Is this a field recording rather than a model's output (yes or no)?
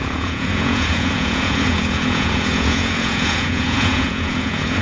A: no